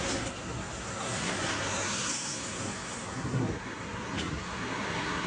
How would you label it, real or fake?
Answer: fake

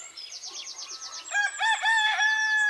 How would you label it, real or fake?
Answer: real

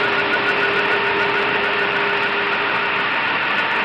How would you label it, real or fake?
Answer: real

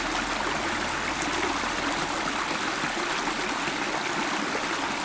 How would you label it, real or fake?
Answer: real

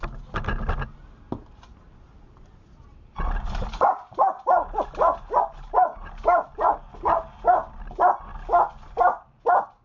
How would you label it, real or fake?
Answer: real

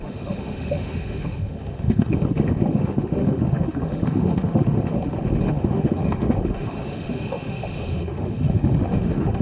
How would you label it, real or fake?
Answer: fake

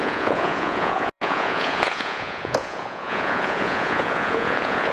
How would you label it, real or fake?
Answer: fake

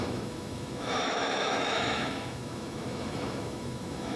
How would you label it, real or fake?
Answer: fake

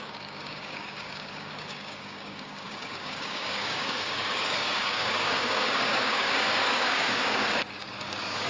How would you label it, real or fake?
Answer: fake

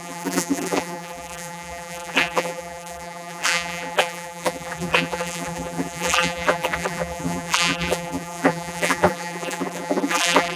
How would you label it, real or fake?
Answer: fake